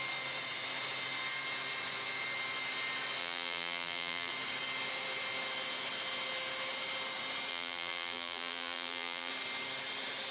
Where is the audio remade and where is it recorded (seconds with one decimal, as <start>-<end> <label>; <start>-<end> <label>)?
0.0-3.2 recorded; 3.2-4.3 remade; 4.3-7.5 recorded; 7.5-9.3 remade; 9.3-10.3 recorded